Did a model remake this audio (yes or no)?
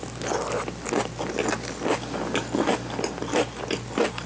no